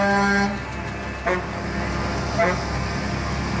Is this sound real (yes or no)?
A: yes